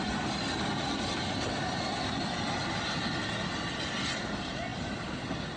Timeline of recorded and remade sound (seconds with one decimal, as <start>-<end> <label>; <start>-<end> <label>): 0.0-5.6 recorded